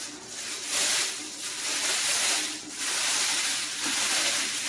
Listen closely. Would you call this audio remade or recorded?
recorded